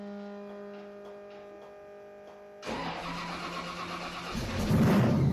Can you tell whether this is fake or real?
real